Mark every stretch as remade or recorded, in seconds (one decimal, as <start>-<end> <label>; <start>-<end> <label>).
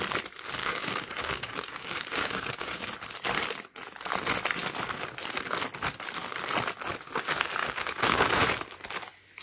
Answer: 0.0-0.6 recorded; 0.6-2.8 remade; 2.8-7.6 recorded; 7.6-8.3 remade; 8.3-9.4 recorded